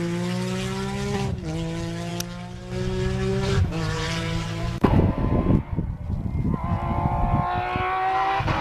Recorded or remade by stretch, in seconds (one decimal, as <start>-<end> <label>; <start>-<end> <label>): 0.0-3.3 recorded; 3.3-5.1 remade; 5.1-8.6 recorded